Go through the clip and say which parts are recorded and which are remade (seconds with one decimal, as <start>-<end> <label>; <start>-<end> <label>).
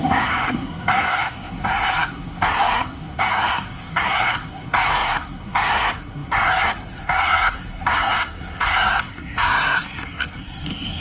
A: 0.0-11.0 remade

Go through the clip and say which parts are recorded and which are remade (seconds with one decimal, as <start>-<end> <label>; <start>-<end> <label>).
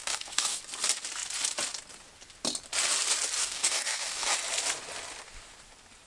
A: 0.0-0.6 remade; 0.6-3.4 recorded; 3.4-4.3 remade; 4.3-6.1 recorded